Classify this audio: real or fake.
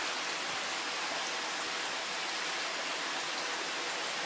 real